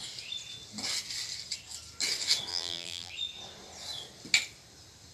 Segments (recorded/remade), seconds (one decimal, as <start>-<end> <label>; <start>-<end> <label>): 0.0-2.5 recorded; 2.5-3.1 remade; 3.1-5.1 recorded